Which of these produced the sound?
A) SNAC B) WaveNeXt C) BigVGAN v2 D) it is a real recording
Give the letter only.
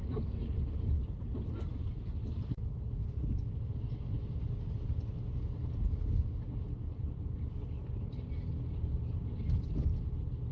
D